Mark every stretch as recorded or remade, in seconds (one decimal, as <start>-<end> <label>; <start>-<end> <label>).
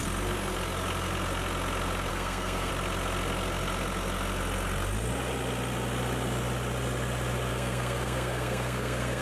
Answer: 0.0-2.1 recorded; 2.1-2.7 remade; 2.7-7.5 recorded; 7.5-9.2 remade